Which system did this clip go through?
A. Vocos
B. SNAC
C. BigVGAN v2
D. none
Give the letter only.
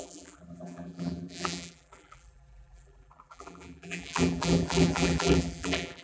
C